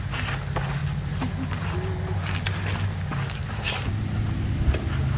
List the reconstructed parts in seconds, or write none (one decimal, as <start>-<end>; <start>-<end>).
none